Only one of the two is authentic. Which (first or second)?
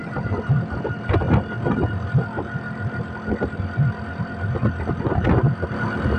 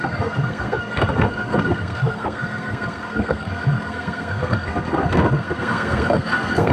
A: first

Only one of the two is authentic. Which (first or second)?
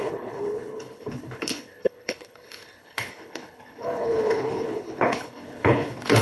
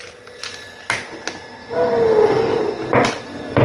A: second